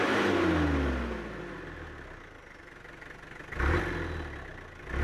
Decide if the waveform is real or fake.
real